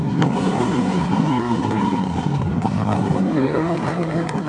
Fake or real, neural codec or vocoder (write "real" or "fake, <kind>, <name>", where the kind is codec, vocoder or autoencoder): fake, codec, SNAC